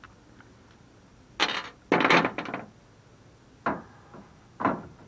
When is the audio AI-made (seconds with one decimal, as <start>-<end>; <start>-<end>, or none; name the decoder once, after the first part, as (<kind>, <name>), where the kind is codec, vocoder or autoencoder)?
none